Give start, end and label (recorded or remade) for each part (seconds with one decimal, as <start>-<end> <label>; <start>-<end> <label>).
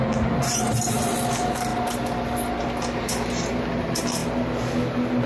0.0-5.3 recorded